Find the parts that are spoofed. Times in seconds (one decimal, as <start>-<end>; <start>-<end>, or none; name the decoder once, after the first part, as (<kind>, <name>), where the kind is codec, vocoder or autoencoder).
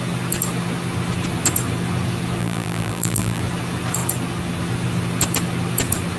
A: 2.4-3.4 (vocoder, BigVGAN v2)